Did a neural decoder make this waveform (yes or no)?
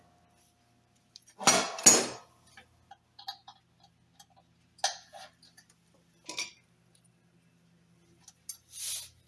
no